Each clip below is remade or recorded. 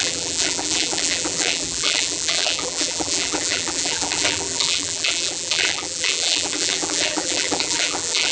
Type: remade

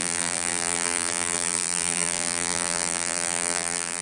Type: remade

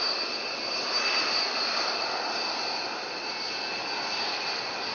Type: recorded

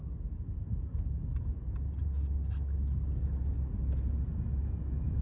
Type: recorded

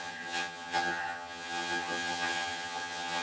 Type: remade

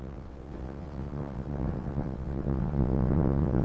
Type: remade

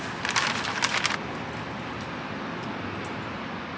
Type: recorded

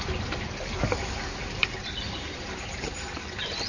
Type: recorded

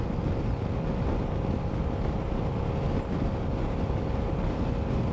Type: recorded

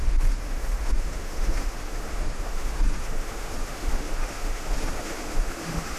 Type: remade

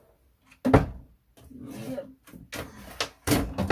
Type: recorded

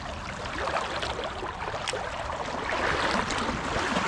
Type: recorded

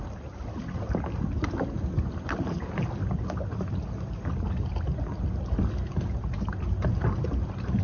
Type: recorded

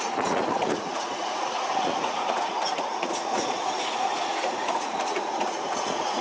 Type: remade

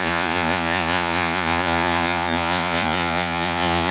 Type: remade